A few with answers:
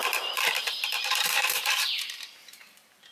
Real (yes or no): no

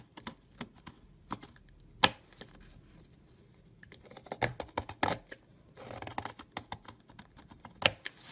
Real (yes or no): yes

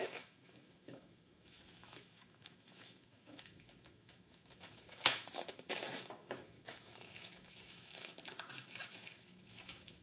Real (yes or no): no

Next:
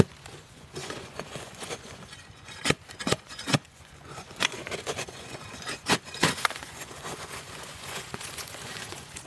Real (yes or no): no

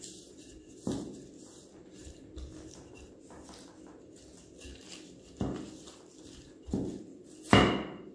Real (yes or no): yes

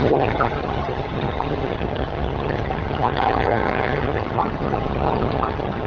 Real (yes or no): no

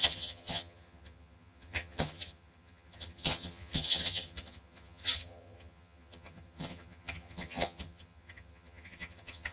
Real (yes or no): no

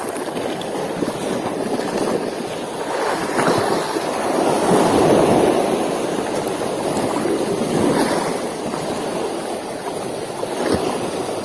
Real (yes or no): no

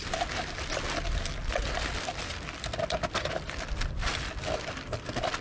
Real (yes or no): yes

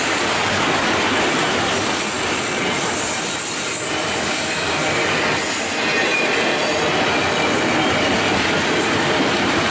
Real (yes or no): yes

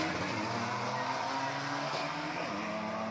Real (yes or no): yes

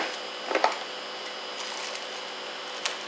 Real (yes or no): yes